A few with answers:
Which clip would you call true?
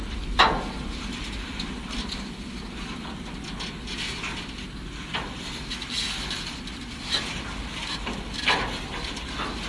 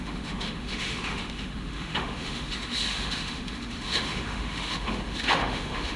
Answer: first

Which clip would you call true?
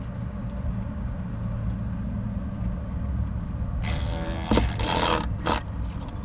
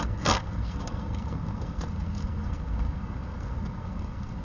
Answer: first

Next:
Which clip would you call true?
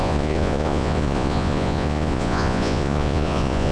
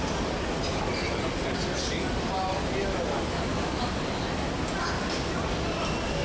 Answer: second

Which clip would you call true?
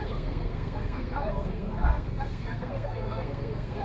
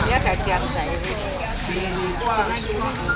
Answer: second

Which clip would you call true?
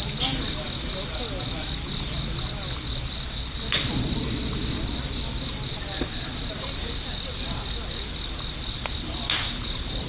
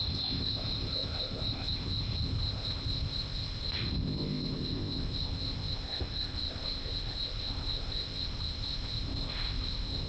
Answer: first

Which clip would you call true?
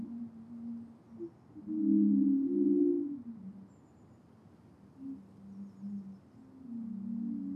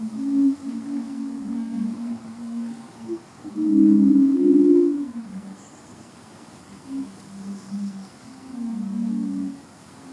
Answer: first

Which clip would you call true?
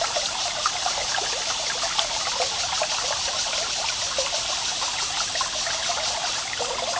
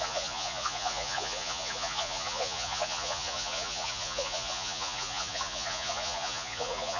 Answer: first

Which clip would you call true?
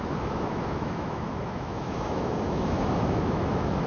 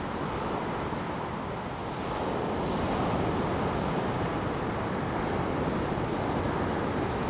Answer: second